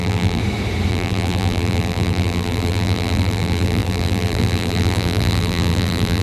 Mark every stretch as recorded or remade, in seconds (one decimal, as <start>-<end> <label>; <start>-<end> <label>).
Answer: 0.0-0.4 remade; 0.4-0.9 recorded; 0.9-6.2 remade